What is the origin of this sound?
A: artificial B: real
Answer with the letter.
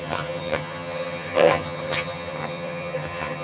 A